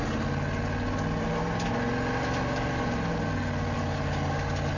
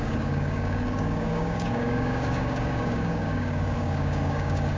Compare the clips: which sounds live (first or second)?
first